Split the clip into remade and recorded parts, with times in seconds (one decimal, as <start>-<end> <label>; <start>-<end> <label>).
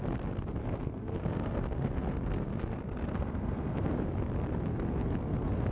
0.0-0.6 recorded; 0.6-3.9 remade; 3.9-4.7 recorded; 4.7-5.7 remade